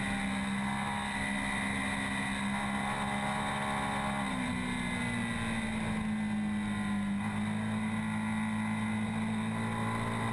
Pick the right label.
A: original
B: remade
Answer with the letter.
A